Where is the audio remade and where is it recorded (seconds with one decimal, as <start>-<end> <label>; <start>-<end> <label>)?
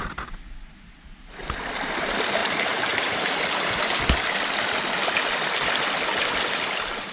0.0-2.4 recorded; 2.4-3.8 remade; 3.8-7.1 recorded